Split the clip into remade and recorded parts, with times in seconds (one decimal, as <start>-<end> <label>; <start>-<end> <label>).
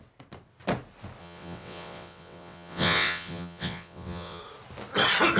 0.0-1.2 recorded; 1.2-4.4 remade; 4.4-5.4 recorded